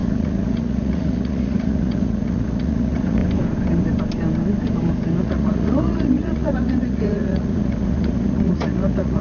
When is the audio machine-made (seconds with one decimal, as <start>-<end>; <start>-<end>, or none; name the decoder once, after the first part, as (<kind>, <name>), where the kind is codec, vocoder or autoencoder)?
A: 0.0-3.2 (vocoder, Vocos); 5.2-9.2